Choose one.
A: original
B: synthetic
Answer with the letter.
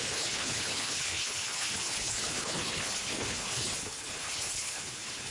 B